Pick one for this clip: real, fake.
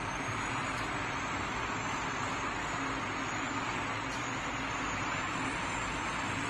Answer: real